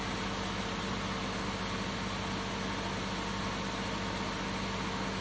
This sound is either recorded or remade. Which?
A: recorded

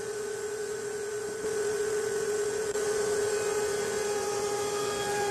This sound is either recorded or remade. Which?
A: remade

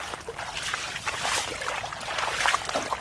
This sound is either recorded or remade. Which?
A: recorded